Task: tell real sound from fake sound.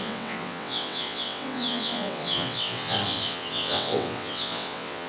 fake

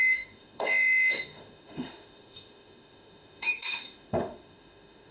fake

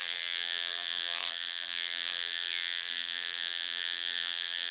fake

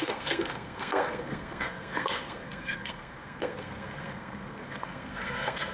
fake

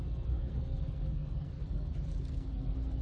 fake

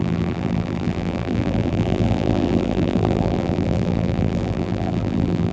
fake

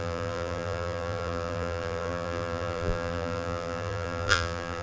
fake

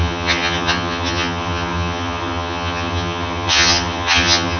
fake